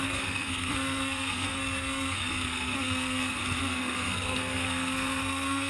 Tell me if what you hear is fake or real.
fake